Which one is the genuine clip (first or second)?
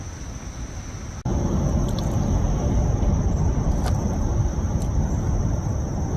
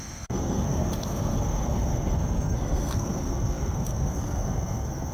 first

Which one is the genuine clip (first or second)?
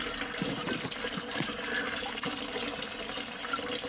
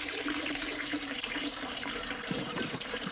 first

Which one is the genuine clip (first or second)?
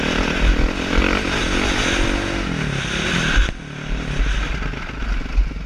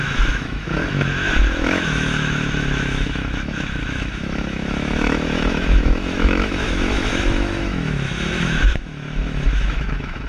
first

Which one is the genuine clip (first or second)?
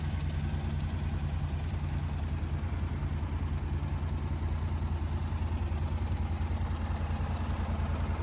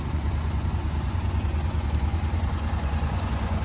first